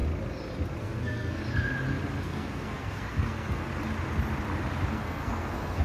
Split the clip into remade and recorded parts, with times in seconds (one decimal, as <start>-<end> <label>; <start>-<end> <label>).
0.0-0.8 recorded; 0.8-1.4 remade; 1.4-2.2 recorded; 2.2-3.7 remade; 3.7-4.9 recorded; 4.9-5.8 remade